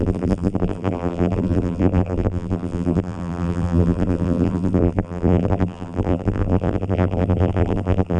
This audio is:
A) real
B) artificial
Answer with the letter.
B